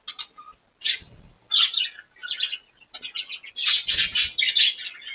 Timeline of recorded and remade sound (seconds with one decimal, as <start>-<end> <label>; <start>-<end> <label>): 0.0-5.1 recorded